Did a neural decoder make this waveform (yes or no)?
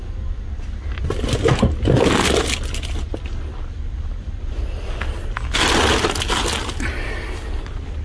no